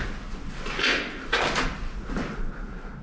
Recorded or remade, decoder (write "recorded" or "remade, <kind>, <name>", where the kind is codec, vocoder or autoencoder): recorded